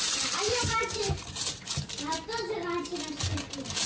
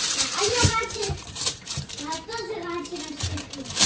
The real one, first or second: first